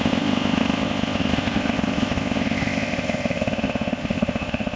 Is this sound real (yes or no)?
no